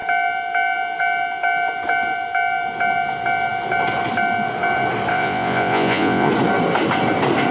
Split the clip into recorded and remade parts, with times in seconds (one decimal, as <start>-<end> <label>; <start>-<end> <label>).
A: 0.0-5.1 recorded; 5.1-6.3 remade; 6.3-7.5 recorded

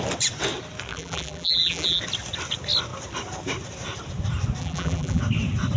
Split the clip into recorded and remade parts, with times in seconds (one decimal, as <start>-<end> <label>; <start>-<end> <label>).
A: 0.0-0.9 recorded; 0.9-2.0 remade; 2.0-4.6 recorded; 4.6-5.2 remade; 5.2-5.8 recorded

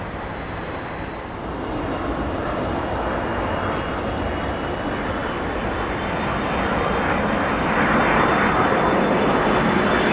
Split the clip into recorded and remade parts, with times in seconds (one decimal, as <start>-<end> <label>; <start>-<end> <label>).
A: 0.0-10.1 recorded

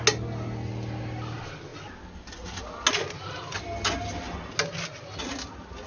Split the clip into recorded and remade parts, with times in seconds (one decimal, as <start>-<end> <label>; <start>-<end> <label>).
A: 0.0-5.9 recorded

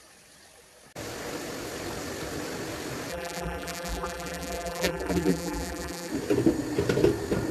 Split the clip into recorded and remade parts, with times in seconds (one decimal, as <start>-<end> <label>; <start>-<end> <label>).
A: 0.0-3.1 recorded; 3.1-6.1 remade; 6.1-7.5 recorded

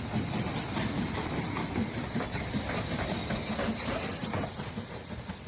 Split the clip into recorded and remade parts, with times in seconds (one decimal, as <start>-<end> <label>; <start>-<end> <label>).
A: 0.0-3.2 remade; 3.2-4.8 recorded; 4.8-5.5 remade